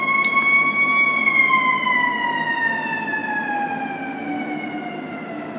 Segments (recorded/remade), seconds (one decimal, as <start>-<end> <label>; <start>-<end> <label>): 0.0-5.6 recorded